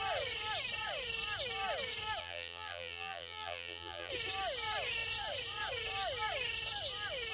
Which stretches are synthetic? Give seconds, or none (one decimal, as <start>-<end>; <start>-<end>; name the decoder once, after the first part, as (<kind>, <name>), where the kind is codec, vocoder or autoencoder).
2.2-4.1 (vocoder, BigVGAN v2)